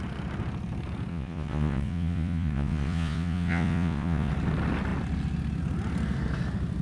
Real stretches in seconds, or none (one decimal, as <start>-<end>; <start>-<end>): 0.0-1.1; 4.3-6.8